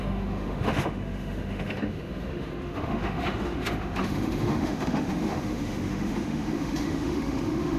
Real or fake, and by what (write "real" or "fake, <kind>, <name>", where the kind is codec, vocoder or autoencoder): fake, autoencoder, DAC-VAE